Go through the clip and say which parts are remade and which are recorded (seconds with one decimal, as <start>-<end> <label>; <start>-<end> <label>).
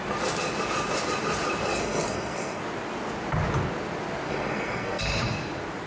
0.0-1.7 recorded; 1.7-2.6 remade; 2.6-4.3 recorded; 4.3-5.0 remade; 5.0-5.9 recorded